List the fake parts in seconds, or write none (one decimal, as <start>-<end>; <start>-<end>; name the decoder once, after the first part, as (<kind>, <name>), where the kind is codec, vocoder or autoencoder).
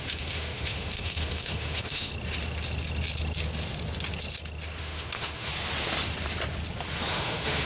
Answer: 0.0-2.1 (autoencoder, DAC-VAE); 4.8-5.5; 7.1-7.7